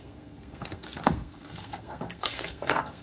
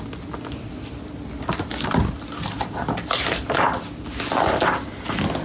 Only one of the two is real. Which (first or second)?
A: second